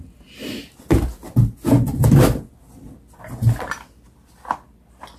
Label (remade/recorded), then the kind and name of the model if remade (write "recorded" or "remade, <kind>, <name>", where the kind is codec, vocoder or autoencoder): recorded